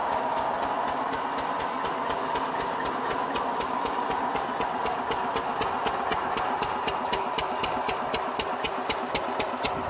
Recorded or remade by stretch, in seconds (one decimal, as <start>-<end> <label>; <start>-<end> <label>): 0.0-9.9 recorded